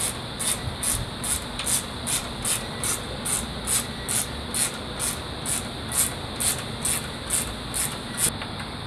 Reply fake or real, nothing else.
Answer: real